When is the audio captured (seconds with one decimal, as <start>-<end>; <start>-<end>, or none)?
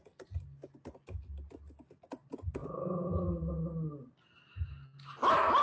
0.0-5.6